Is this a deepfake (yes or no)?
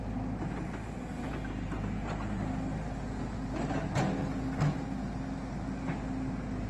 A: no